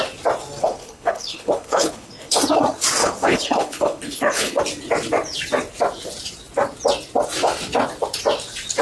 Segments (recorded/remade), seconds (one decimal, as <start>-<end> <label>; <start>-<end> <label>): 0.0-0.6 recorded; 0.6-2.4 remade; 2.4-3.0 recorded; 3.0-4.6 remade; 4.6-8.8 recorded